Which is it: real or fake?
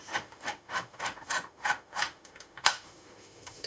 fake